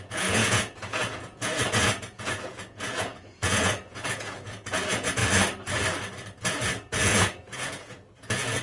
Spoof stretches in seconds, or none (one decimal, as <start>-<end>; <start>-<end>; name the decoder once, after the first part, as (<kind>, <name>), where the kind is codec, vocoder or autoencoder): 0.0-5.2 (vocoder, Vocos); 6.5-8.6